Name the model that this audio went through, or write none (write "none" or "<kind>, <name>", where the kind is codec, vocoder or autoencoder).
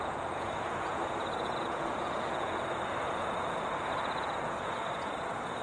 vocoder, Vocos